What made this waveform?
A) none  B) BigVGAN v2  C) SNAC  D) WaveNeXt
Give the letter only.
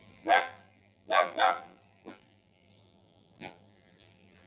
B